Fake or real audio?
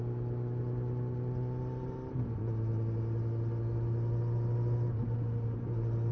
real